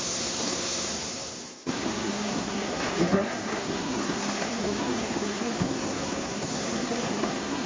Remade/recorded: remade